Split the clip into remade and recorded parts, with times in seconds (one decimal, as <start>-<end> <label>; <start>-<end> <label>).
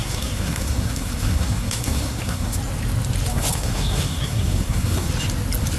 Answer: 0.0-2.6 remade; 2.6-3.3 recorded; 3.3-5.1 remade; 5.1-5.8 recorded